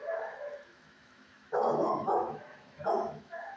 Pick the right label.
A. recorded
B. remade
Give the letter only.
B